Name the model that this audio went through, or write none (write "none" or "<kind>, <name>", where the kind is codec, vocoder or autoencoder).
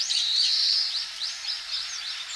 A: vocoder, BigVGAN v2